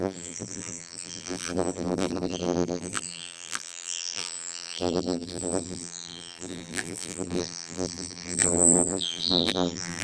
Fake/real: fake